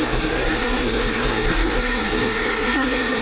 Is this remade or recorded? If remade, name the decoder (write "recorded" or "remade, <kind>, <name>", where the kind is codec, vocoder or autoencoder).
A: remade, codec, SNAC